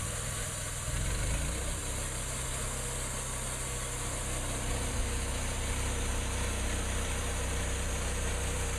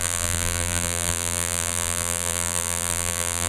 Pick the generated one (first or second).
second